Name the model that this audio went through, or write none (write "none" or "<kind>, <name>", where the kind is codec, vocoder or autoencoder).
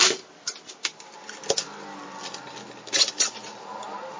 none